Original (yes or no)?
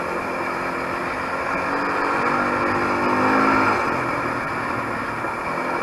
yes